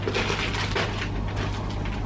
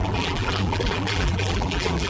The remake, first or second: second